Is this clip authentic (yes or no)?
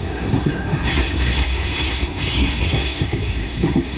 no